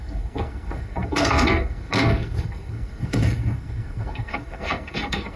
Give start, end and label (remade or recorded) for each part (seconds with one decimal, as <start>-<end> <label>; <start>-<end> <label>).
0.0-5.4 remade